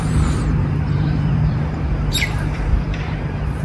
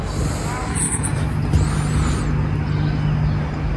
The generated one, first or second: first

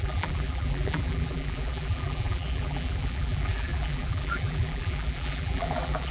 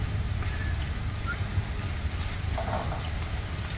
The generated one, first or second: first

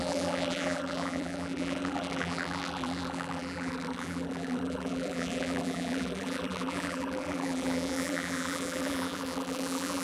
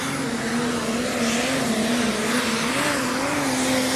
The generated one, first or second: first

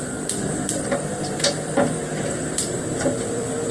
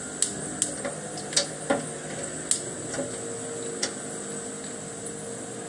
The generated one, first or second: first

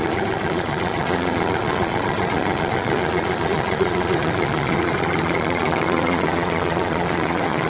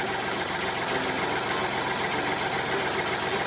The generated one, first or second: first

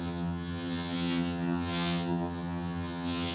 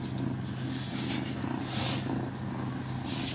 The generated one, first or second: first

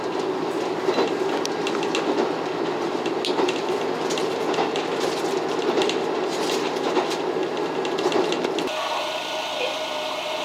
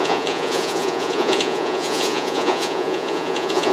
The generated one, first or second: second